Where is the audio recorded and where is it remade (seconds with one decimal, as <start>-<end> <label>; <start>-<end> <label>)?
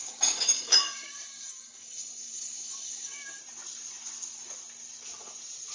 0.0-3.4 remade; 3.4-5.7 recorded